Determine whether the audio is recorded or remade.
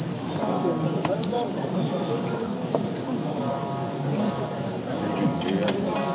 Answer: recorded